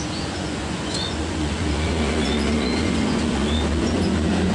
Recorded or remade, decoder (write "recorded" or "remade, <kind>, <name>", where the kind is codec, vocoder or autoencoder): remade, vocoder, Vocos